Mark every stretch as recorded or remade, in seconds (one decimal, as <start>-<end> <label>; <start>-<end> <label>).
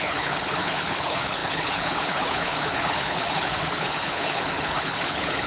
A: 0.0-5.5 remade